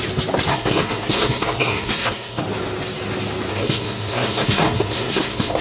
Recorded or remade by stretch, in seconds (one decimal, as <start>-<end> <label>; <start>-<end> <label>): 0.0-0.5 recorded; 0.5-2.4 remade; 2.4-3.5 recorded; 3.5-5.6 remade